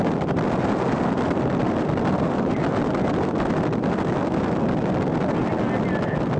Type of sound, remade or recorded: recorded